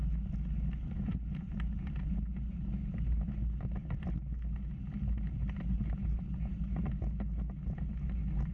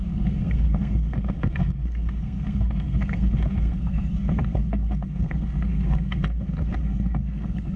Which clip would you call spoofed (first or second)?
second